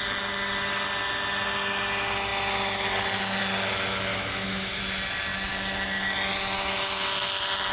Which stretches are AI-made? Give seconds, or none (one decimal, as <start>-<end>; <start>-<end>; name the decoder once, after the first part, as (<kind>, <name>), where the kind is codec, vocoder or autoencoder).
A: 4.1-4.8 (autoencoder, DAC-VAE)